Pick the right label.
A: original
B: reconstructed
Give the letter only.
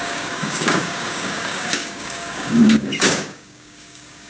B